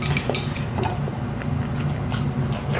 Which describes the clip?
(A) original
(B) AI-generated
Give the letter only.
A